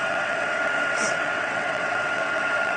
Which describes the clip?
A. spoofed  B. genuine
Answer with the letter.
A